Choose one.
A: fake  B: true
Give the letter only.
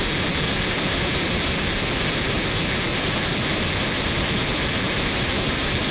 B